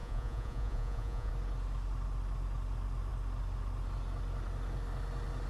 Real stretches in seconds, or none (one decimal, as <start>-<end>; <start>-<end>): 1.3-5.5